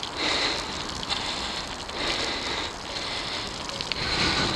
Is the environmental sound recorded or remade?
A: recorded